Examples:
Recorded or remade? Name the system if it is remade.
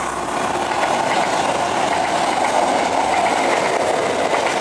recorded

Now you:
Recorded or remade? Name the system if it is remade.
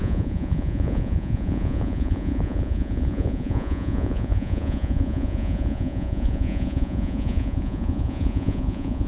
remade, vocoder, Vocos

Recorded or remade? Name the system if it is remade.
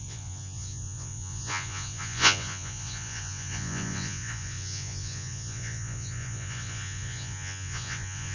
remade, vocoder, Vocos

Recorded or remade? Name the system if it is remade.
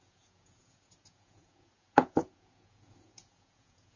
remade, vocoder, Vocos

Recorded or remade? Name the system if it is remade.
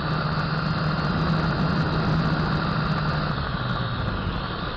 recorded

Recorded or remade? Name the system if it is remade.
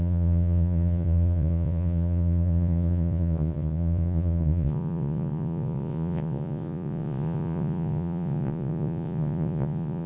remade, vocoder, Vocos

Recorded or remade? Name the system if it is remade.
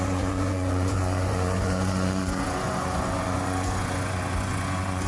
remade, vocoder, Vocos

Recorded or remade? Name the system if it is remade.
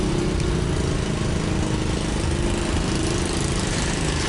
recorded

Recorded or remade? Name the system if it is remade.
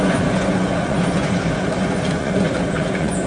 remade, vocoder, Vocos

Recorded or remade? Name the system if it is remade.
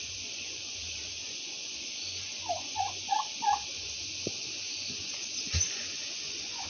remade, vocoder, Vocos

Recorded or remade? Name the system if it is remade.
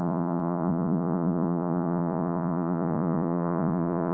remade, vocoder, Vocos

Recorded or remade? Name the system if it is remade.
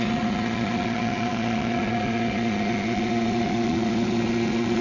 remade, vocoder, Vocos